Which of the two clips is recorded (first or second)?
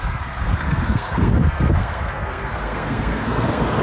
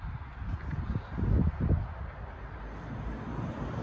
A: second